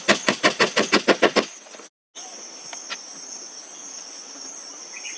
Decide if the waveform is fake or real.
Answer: real